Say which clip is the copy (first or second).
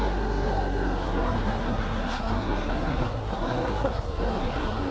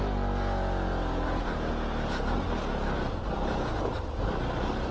first